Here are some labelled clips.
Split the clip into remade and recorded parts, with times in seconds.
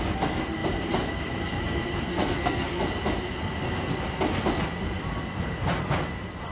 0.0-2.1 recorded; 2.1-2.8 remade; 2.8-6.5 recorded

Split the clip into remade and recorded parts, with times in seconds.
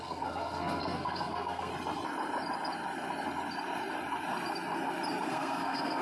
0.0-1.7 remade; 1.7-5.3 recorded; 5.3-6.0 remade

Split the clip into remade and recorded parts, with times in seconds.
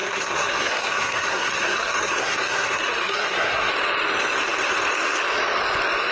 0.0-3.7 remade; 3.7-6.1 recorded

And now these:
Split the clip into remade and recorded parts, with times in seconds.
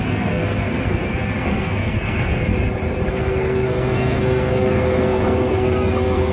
0.0-2.5 remade; 2.5-3.1 recorded; 3.1-6.3 remade